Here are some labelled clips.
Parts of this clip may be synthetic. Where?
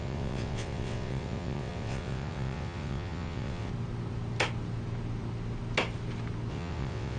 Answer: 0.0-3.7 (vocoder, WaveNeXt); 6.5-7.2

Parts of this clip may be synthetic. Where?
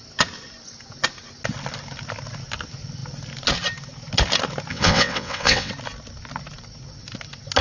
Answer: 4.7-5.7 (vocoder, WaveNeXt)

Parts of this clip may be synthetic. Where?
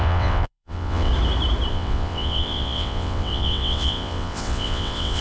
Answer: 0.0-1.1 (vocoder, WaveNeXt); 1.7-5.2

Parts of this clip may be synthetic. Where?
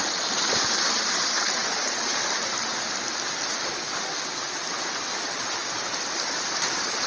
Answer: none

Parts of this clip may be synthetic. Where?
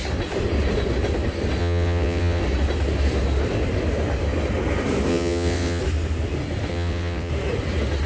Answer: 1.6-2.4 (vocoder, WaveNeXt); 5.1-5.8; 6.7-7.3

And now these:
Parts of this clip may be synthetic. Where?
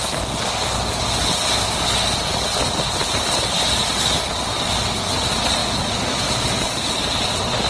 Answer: none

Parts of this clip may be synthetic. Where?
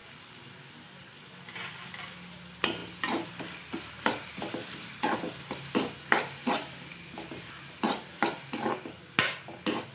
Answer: none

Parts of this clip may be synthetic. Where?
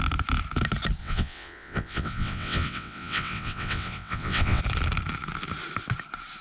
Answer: 1.0-4.6 (vocoder, WaveNeXt)